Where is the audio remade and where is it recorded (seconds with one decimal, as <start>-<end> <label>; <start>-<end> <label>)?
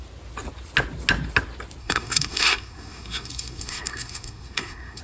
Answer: 0.0-1.8 recorded; 1.8-5.0 remade